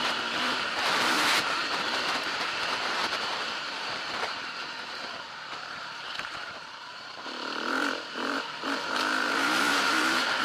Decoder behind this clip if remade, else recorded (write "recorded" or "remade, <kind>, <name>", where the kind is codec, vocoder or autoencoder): remade, vocoder, BigVGAN v2